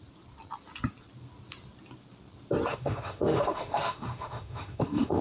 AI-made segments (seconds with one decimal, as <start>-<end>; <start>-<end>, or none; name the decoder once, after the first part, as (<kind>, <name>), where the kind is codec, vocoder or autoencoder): 2.7-5.2 (autoencoder, DAC-VAE)